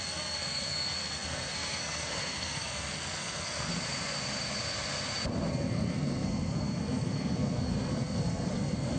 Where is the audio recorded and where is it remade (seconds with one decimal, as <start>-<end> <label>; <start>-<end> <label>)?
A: 0.0-3.7 remade; 3.7-5.5 recorded; 5.5-9.0 remade